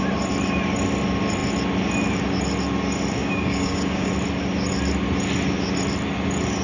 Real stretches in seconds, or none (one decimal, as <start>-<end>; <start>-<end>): 0.0-3.2; 4.1-6.6